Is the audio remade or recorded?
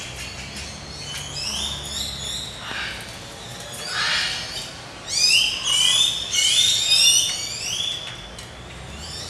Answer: recorded